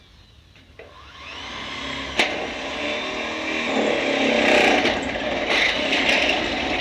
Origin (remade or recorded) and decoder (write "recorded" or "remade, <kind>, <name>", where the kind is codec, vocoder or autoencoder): recorded